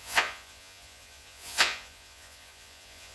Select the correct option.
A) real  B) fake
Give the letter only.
B